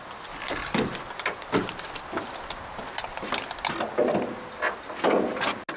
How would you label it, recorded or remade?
recorded